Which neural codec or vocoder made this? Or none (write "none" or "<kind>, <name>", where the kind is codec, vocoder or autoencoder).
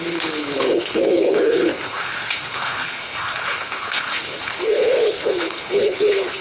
codec, HILCodec